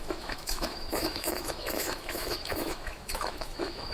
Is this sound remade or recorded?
remade